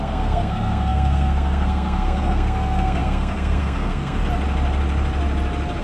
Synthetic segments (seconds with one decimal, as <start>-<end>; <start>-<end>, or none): 0.0-4.2